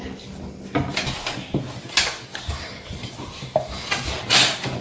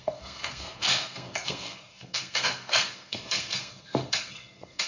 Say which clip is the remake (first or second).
second